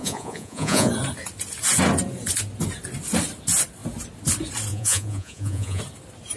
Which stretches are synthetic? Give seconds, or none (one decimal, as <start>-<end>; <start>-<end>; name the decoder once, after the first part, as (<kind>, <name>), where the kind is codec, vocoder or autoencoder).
0.0-0.9 (vocoder, Vocos); 4.7-5.8